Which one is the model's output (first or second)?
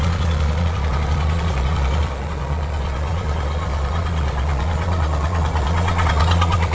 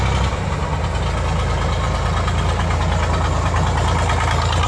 first